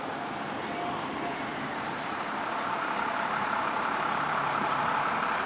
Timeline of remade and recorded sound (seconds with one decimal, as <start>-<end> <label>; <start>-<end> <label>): 0.0-1.5 recorded; 1.5-4.8 remade; 4.8-5.5 recorded